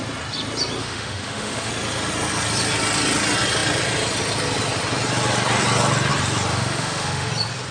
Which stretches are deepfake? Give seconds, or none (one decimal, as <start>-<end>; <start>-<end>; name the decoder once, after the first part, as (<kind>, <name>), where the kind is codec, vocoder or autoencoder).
0.8-1.7 (autoencoder, DAC-VAE); 6.5-7.3

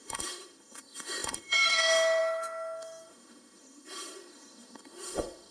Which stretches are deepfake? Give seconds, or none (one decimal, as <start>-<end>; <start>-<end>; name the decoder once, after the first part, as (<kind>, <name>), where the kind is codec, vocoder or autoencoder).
0.0-5.5 (autoencoder, DAC-VAE)

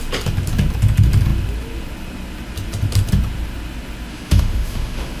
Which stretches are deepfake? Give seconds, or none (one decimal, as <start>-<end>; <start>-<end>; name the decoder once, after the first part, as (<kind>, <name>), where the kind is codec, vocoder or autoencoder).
4.1-5.2 (autoencoder, DAC-VAE)